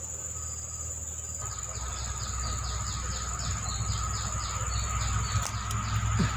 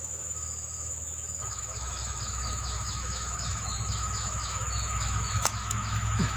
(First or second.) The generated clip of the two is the second